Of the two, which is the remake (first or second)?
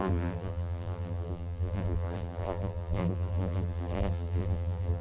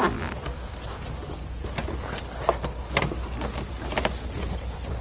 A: first